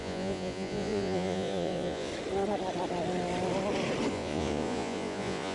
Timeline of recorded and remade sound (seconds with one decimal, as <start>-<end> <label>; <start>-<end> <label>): 0.0-2.1 remade; 2.1-4.1 recorded; 4.1-5.5 remade